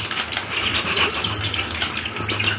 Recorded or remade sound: recorded